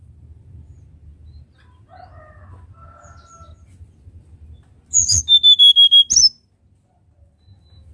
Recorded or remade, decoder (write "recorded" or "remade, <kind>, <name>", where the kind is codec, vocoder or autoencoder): recorded